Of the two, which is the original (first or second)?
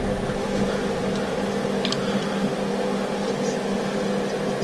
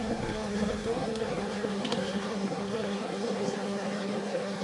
first